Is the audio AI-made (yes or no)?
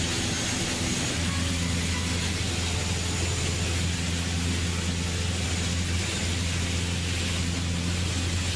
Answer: no